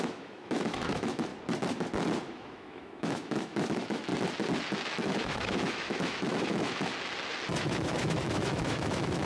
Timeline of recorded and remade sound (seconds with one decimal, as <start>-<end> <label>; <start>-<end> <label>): 0.0-1.3 remade; 1.3-2.3 recorded; 2.3-4.1 remade; 4.1-4.9 recorded; 4.9-6.9 remade; 6.9-7.6 recorded; 7.6-9.3 remade